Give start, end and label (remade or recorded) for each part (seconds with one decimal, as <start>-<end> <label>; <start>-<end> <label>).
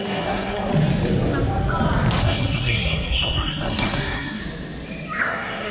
0.0-0.7 remade; 0.7-2.2 recorded; 2.2-4.4 remade; 4.4-5.2 recorded; 5.2-5.7 remade